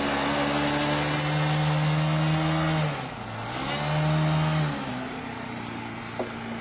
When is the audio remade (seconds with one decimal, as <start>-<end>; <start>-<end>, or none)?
4.9-6.0